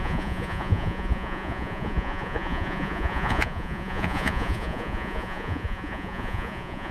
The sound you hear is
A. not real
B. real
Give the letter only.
A